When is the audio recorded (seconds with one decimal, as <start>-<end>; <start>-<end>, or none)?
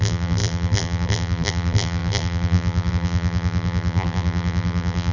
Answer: none